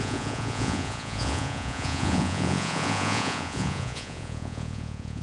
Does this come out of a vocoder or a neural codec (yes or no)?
yes